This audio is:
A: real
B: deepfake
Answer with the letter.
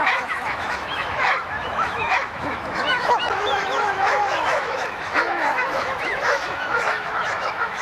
B